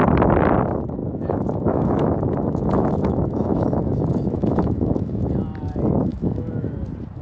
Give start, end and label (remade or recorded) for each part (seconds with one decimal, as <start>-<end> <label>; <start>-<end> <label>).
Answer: 0.0-1.0 recorded; 1.0-5.3 remade; 5.3-6.1 recorded; 6.1-6.7 remade; 6.7-7.2 recorded